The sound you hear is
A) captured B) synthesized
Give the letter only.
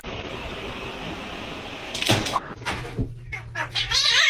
B